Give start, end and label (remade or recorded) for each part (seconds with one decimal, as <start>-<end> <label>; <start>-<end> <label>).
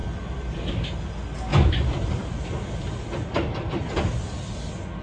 0.0-0.5 remade; 0.5-1.5 recorded; 1.5-4.5 remade; 4.5-5.0 recorded